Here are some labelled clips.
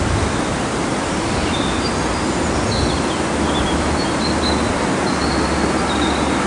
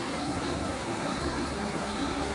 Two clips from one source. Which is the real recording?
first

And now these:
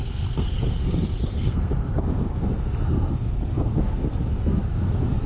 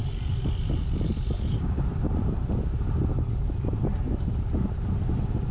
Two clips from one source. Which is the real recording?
second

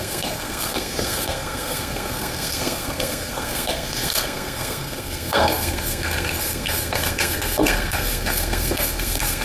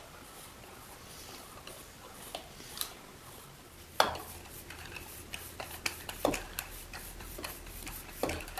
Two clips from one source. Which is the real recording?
second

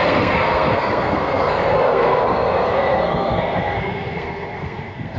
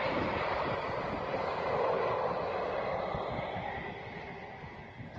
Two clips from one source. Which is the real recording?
second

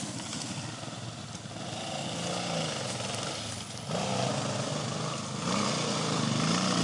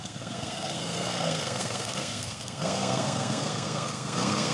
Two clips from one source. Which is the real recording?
first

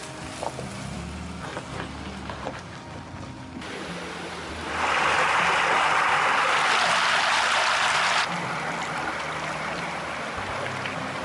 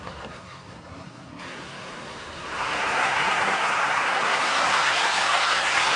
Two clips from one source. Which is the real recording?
first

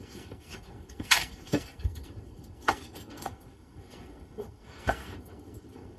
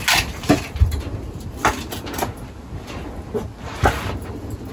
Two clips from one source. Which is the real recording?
second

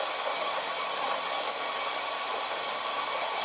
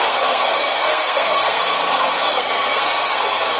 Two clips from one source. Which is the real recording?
first